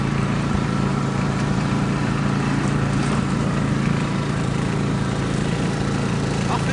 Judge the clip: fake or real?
fake